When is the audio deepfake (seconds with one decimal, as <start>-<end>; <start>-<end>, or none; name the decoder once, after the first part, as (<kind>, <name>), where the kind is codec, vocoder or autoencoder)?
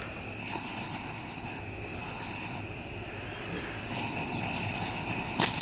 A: 0.4-1.6 (codec, HILCodec); 2.0-2.6; 3.9-5.6